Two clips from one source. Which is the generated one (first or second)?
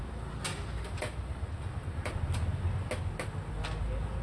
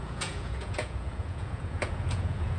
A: second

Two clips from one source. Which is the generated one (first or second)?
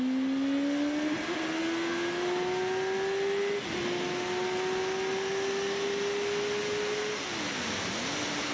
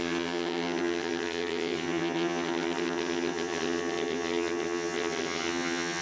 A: second